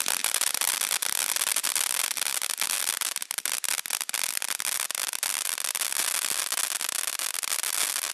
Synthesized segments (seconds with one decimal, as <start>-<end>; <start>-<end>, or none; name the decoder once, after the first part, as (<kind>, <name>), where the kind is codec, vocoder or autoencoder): none